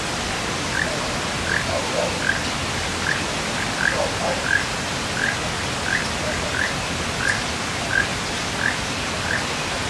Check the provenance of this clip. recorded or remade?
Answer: recorded